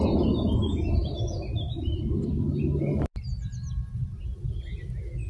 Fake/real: real